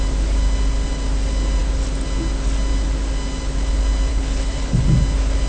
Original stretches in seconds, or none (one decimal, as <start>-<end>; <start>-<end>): 0.0-4.1; 4.8-5.5